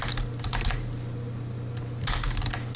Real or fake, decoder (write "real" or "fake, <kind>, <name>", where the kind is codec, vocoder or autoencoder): real